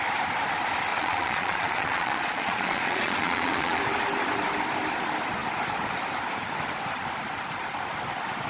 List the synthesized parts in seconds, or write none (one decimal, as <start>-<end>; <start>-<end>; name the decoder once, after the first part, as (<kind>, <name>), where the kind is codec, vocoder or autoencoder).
0.9-3.8 (vocoder, Vocos)